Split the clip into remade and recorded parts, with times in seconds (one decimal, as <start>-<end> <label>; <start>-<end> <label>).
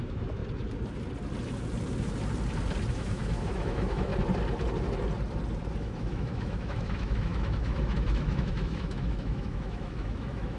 0.0-0.4 remade; 0.4-2.9 recorded; 2.9-4.1 remade; 4.1-5.8 recorded; 5.8-10.6 remade